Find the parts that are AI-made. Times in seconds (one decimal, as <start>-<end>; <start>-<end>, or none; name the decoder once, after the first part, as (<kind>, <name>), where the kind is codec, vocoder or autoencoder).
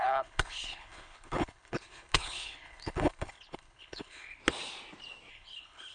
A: 0.0-4.4 (codec, HILCodec); 5.3-5.9